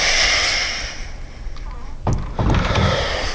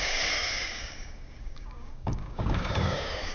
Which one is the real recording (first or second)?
first